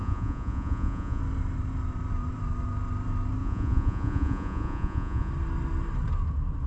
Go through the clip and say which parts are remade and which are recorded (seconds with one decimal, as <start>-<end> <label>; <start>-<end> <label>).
0.0-1.2 remade; 1.2-3.4 recorded; 3.4-5.3 remade; 5.3-6.7 recorded